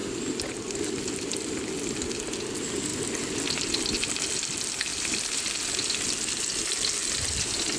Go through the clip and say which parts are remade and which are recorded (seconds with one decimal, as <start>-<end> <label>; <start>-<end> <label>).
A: 0.0-4.9 recorded; 4.9-5.6 remade; 5.6-7.8 recorded